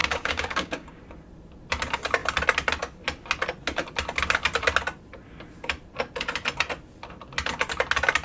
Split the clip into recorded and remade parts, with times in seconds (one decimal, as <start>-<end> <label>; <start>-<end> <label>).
0.0-1.0 remade; 1.0-8.2 recorded